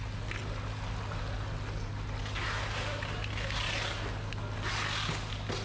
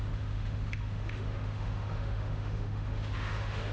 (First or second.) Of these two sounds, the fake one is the second